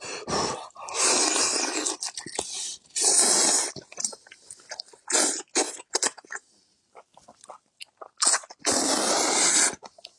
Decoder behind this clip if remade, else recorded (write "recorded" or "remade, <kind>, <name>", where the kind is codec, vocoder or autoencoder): recorded